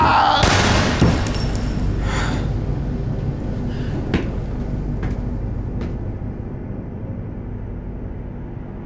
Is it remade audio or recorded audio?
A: recorded